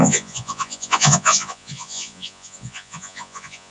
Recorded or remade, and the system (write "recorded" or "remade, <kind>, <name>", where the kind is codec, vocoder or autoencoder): remade, vocoder, Vocos